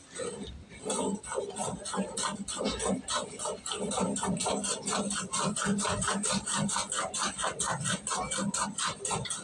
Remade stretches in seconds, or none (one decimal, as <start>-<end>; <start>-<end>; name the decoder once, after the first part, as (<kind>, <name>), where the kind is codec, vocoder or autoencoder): none